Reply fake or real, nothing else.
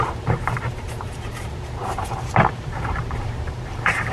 fake